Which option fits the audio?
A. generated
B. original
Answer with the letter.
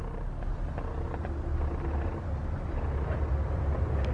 B